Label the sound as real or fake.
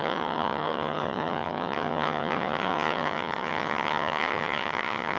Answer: fake